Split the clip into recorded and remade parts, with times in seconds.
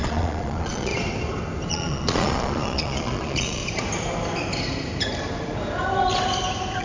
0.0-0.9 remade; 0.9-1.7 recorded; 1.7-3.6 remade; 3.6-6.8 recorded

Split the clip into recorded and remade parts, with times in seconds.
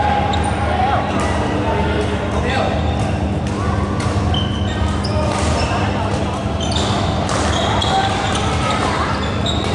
0.0-9.7 recorded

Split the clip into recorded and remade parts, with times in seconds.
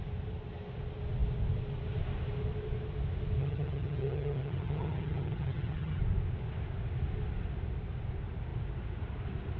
0.0-3.4 recorded; 3.4-6.0 remade; 6.0-9.6 recorded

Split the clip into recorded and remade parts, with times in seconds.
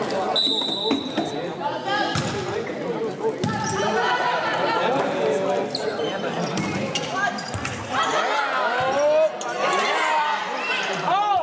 0.0-11.4 recorded